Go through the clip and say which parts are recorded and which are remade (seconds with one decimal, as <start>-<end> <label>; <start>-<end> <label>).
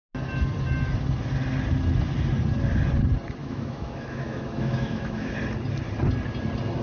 0.0-3.4 recorded; 3.4-5.3 remade; 5.3-6.8 recorded